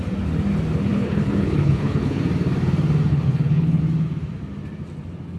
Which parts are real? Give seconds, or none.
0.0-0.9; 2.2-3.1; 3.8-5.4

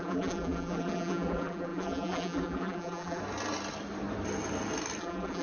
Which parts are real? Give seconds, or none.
3.2-5.0

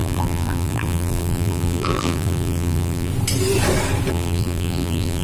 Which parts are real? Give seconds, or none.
3.1-4.1

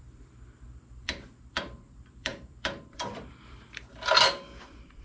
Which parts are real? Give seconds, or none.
none

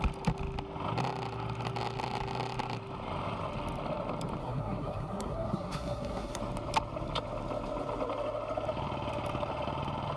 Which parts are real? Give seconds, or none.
0.0-4.4; 6.4-10.2

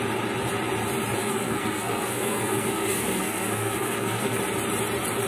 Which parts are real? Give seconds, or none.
0.0-1.2; 4.4-5.3